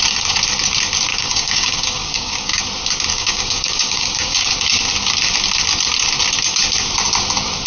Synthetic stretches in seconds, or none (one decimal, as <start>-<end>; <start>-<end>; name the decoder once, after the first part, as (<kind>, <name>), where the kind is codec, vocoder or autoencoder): 1.1-2.6 (codec, DAC); 3.1-4.5